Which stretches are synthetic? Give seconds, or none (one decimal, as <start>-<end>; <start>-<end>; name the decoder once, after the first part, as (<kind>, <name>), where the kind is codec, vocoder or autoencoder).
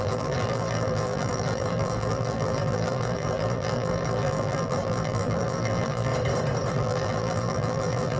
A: 0.0-6.1 (vocoder, BigVGAN v2); 6.7-8.2